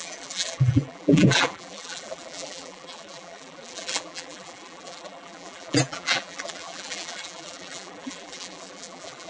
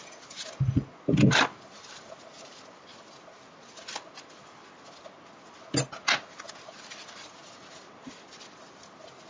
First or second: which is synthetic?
first